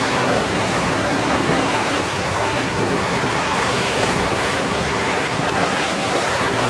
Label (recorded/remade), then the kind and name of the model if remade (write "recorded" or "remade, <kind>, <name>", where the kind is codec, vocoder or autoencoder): remade, codec, SNAC